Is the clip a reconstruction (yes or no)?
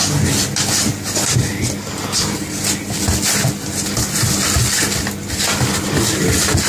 no